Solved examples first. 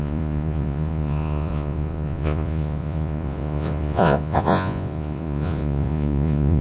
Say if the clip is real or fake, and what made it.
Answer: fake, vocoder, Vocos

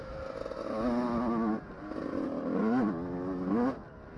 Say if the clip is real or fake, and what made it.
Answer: real